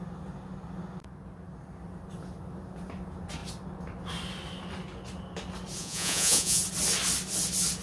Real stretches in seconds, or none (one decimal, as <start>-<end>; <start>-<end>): 0.0-5.8; 6.6-7.8